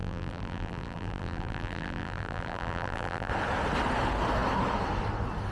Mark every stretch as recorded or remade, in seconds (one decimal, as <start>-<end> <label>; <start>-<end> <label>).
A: 0.0-3.3 remade; 3.3-5.5 recorded